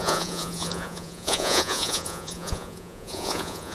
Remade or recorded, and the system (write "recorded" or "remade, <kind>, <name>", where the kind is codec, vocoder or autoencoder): remade, vocoder, Vocos